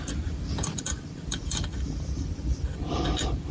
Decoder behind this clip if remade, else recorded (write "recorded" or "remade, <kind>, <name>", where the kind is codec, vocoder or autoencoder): remade, vocoder, BigVGAN v2